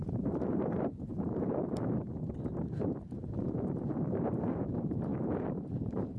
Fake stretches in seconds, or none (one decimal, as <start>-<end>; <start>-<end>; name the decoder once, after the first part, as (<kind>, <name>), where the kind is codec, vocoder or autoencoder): 0.0-6.2 (vocoder, BigVGAN v2)